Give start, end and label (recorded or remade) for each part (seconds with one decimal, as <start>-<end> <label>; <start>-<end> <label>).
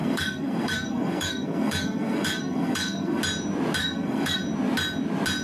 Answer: 0.0-3.2 remade; 3.2-3.8 recorded; 3.8-4.4 remade; 4.4-5.4 recorded